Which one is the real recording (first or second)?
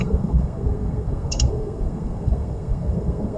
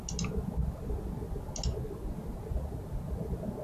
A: second